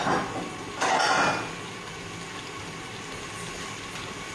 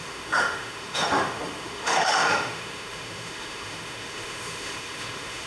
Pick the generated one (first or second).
second